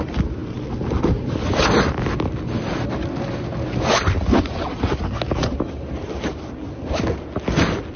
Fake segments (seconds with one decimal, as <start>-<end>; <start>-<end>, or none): 5.4-6.0